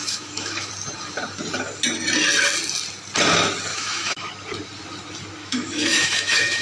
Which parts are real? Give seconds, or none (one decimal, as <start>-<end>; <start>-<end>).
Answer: 0.7-3.7; 4.3-5.4